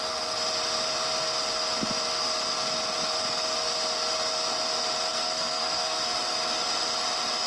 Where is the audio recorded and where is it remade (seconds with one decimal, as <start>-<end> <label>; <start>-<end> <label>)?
0.0-5.1 recorded; 5.1-6.0 remade; 6.0-7.5 recorded

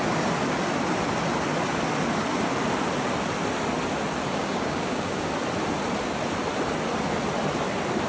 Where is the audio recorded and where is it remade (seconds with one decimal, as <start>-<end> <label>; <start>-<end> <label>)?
0.0-4.4 recorded; 4.4-5.3 remade; 5.3-8.1 recorded